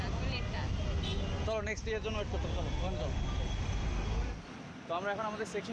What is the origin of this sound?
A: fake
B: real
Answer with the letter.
B